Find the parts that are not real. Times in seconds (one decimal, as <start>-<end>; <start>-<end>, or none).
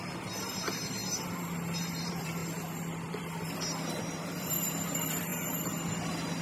0.0-1.0; 2.0-2.4; 3.9-5.3